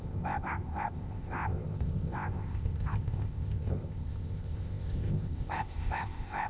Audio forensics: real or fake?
fake